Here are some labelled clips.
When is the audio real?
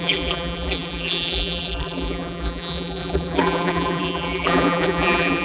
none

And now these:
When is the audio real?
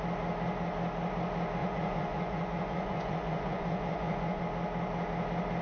0.0-1.6; 4.4-5.6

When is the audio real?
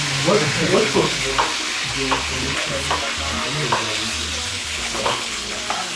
0.0-0.6; 1.2-2.3; 2.8-4.5; 5.6-6.0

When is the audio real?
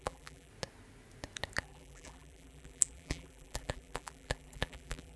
0.5-1.6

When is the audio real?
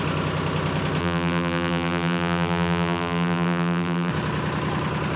0.0-1.0; 4.1-5.2